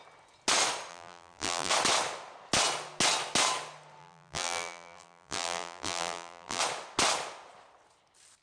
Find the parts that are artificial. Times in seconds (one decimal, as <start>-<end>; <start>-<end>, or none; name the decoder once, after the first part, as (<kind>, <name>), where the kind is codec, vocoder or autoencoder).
0.9-1.7 (vocoder, BigVGAN v2); 4.0-6.6